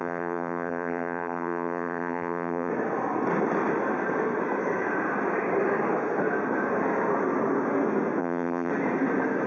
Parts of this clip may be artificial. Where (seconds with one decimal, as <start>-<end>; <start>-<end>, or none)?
0.0-2.7; 8.2-8.7